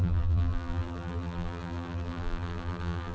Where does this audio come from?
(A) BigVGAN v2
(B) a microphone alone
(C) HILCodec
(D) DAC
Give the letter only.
A